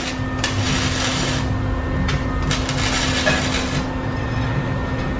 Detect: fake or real real